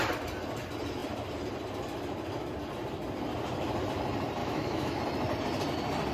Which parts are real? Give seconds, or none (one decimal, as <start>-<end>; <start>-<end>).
0.0-4.4; 5.0-6.1